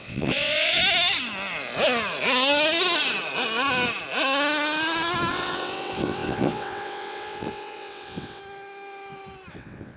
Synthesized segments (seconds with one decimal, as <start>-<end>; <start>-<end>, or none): 0.0-0.8; 5.3-8.4; 9.5-10.0

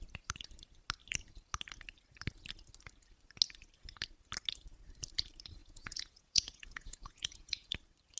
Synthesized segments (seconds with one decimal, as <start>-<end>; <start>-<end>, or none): 5.6-7.7